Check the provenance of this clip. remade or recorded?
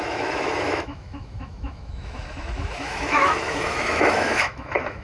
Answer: remade